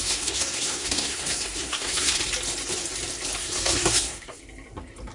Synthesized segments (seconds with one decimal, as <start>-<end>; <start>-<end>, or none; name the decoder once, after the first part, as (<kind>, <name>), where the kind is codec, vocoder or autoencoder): 0.0-2.2 (codec, SNAC); 3.4-4.4